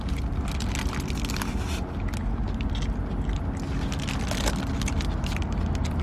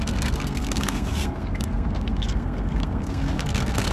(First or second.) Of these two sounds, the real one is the first